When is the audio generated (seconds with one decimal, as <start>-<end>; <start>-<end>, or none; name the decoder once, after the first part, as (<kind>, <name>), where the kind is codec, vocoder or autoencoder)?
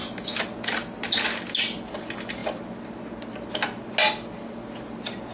none